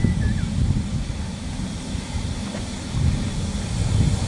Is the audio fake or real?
real